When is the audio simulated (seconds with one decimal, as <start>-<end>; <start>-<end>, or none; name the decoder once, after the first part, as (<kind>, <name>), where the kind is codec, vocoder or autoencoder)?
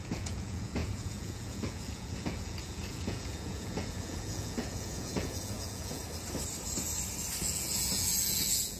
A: 0.0-6.0 (vocoder, Vocos); 7.4-8.8